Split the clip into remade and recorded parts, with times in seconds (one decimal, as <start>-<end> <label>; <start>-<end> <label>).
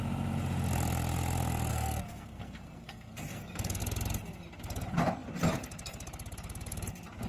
0.0-1.7 recorded; 1.7-3.8 remade; 3.8-7.3 recorded